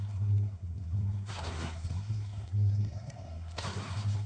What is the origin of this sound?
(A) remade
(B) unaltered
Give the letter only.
A